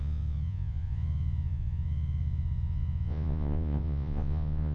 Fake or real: fake